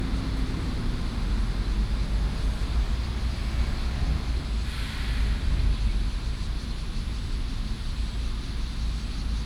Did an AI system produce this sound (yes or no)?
no